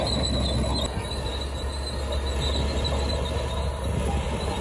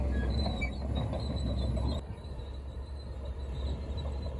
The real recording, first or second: first